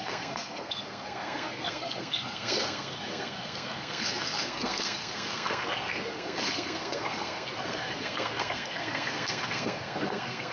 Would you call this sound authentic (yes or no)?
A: no